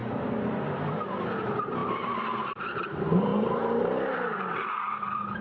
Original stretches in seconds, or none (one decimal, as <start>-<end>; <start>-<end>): none